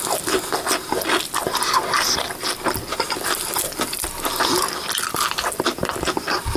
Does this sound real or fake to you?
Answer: real